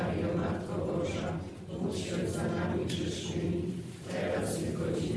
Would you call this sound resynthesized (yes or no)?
yes